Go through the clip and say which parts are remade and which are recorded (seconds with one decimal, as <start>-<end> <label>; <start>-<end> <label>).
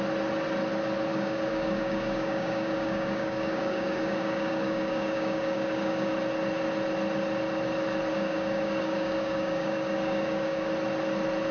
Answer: 0.0-1.1 recorded; 1.1-6.1 remade; 6.1-8.1 recorded; 8.1-10.7 remade; 10.7-11.5 recorded